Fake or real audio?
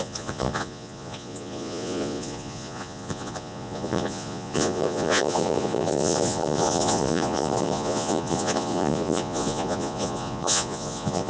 fake